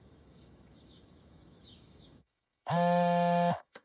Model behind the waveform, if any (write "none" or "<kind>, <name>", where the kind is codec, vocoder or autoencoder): autoencoder, DAC-VAE